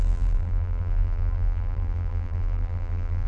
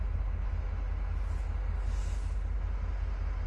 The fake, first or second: first